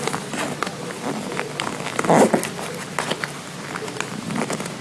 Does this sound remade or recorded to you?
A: recorded